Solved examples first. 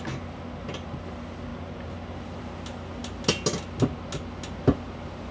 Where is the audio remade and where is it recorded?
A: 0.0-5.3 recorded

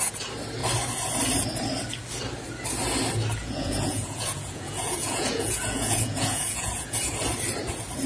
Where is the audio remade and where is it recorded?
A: 0.0-3.4 recorded; 3.4-7.0 remade; 7.0-8.1 recorded